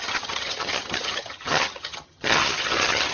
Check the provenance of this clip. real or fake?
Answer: fake